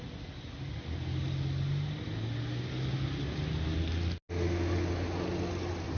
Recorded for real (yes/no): yes